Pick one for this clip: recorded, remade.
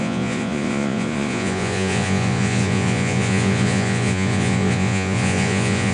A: remade